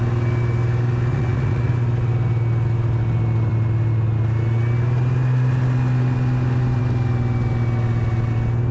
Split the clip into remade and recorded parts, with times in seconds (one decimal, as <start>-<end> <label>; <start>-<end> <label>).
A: 0.0-1.1 recorded; 1.1-1.7 remade; 1.7-8.7 recorded

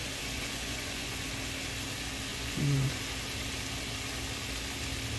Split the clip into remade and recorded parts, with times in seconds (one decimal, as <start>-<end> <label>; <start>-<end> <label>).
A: 0.0-1.3 remade; 1.3-2.3 recorded; 2.3-3.0 remade; 3.0-5.2 recorded

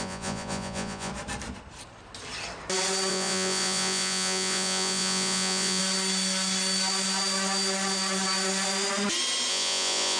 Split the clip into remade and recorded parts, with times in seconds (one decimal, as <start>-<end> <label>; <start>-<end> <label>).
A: 0.0-1.1 remade; 1.1-3.1 recorded; 3.1-5.8 remade; 5.8-9.5 recorded; 9.5-10.2 remade

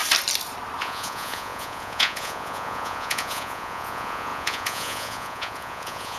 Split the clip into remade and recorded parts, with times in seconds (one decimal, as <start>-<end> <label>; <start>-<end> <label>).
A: 0.0-0.8 recorded; 0.8-6.2 remade